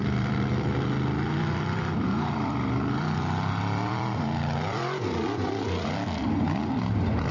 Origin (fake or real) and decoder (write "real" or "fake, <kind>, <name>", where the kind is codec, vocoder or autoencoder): fake, vocoder, BigVGAN v2